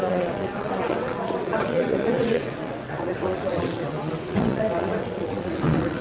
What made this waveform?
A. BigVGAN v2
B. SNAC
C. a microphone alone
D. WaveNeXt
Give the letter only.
D